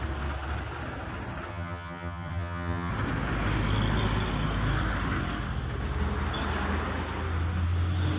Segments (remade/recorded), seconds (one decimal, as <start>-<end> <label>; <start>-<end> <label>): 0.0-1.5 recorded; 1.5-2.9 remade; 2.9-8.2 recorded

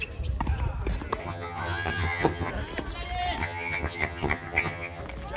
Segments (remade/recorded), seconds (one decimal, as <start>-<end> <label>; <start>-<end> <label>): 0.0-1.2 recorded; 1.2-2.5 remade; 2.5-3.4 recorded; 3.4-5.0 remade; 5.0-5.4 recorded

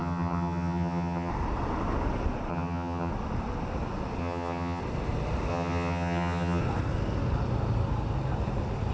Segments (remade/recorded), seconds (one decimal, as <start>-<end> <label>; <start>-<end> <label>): 0.0-1.3 remade; 1.3-2.5 recorded; 2.5-3.1 remade; 3.1-4.2 recorded; 4.2-4.8 remade; 4.8-5.5 recorded; 5.5-6.6 remade; 6.6-8.9 recorded